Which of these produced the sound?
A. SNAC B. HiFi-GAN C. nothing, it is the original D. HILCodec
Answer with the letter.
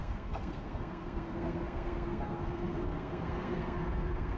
A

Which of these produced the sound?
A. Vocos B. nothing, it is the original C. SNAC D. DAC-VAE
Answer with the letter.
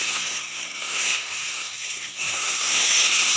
C